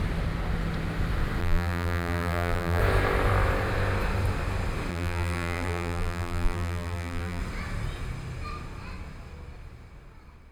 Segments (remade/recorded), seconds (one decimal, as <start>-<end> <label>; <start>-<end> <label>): 0.0-1.4 recorded; 1.4-2.8 remade; 2.8-4.9 recorded; 4.9-7.4 remade; 7.4-10.5 recorded